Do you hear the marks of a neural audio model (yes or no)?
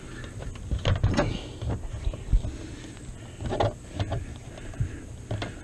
no